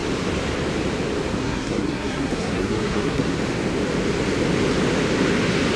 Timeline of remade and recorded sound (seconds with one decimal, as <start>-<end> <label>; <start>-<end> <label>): 0.0-1.4 recorded; 1.4-3.4 remade; 3.4-5.8 recorded

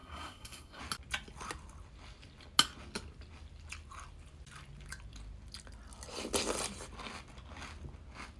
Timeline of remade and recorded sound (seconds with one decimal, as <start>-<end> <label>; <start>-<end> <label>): 0.0-0.8 remade; 0.8-8.4 recorded

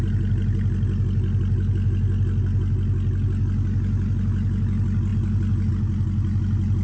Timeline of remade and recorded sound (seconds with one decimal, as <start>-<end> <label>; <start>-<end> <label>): 0.0-6.8 recorded

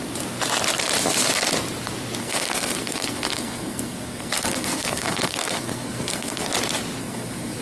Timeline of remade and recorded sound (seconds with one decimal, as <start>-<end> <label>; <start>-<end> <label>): 0.0-2.2 recorded; 2.2-6.5 remade; 6.5-7.0 recorded; 7.0-7.6 remade

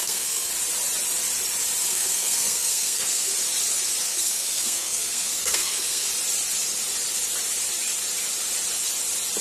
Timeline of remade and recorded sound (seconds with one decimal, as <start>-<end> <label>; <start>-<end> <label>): 0.0-0.5 remade; 0.5-1.9 recorded; 1.9-3.3 remade; 3.3-4.1 recorded; 4.1-6.1 remade; 6.1-9.4 recorded